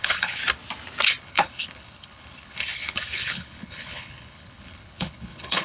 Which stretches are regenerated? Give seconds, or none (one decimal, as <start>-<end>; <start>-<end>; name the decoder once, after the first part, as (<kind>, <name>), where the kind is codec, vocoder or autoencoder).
0.0-0.4 (codec, HILCodec); 1.2-5.6